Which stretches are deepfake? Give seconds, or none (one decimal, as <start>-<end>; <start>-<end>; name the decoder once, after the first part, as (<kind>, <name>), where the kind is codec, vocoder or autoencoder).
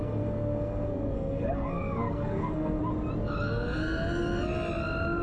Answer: 0.0-2.8 (codec, SNAC)